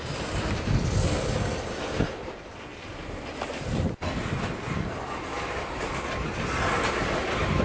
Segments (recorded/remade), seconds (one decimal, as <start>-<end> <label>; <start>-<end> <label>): 0.0-2.7 recorded; 2.7-4.3 remade; 4.3-5.3 recorded; 5.3-5.8 remade; 5.8-7.6 recorded